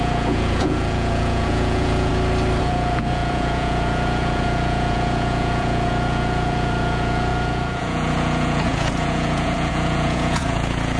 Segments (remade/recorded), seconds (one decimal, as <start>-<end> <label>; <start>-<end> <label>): 0.0-2.1 remade; 2.1-2.6 recorded; 2.6-11.0 remade